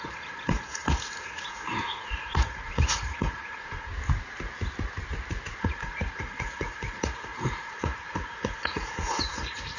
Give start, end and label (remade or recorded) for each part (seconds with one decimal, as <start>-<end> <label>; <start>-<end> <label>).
0.0-3.9 remade; 3.9-5.6 recorded; 5.6-9.8 remade